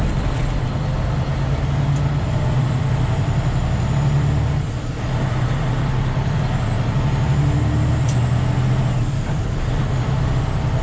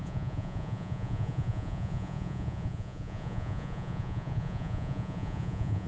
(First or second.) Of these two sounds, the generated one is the second